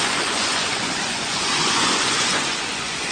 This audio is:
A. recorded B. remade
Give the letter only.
B